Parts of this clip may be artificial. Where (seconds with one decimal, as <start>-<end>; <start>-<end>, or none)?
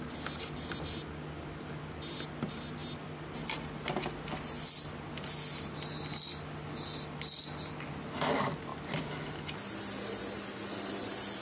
none